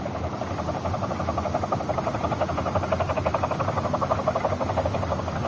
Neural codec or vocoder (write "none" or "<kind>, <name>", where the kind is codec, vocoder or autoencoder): none